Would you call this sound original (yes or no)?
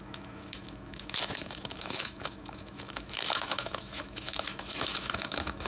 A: no